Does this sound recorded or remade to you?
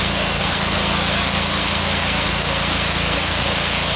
remade